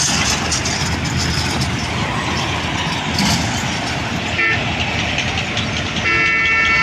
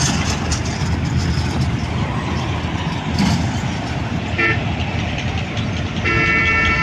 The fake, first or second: second